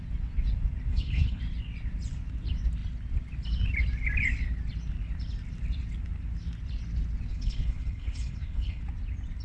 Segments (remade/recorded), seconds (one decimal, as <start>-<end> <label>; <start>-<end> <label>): 0.0-0.9 recorded; 0.9-1.4 remade; 1.4-7.3 recorded; 7.3-8.8 remade; 8.8-9.4 recorded